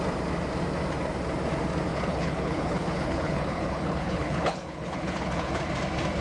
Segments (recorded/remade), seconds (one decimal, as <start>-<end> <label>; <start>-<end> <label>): 0.0-1.9 recorded; 1.9-5.6 remade; 5.6-6.2 recorded